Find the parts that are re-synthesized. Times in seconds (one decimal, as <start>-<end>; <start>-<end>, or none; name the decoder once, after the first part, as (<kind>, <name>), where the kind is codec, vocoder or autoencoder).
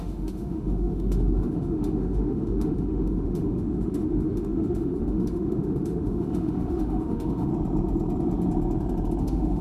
0.0-7.5 (autoencoder, DAC-VAE); 9.2-9.6